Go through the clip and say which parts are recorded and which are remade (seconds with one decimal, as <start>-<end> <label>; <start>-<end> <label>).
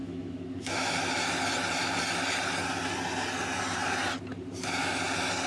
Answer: 0.0-1.1 remade; 1.1-5.5 recorded